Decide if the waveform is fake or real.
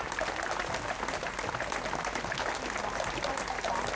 real